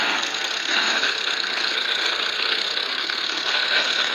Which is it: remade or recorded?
remade